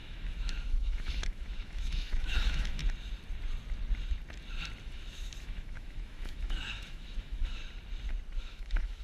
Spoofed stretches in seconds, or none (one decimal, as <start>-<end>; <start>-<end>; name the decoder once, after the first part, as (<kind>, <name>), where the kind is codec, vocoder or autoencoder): 0.0-2.8 (autoencoder, DAC-VAE); 4.8-7.6; 8.4-9.0